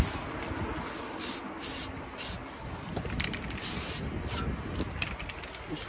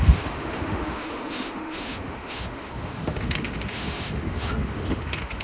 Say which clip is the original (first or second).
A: first